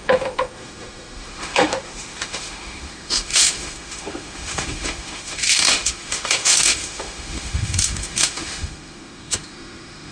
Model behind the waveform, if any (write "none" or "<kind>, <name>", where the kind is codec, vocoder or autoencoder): autoencoder, DAC-VAE